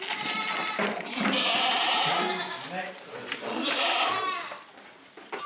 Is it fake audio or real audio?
real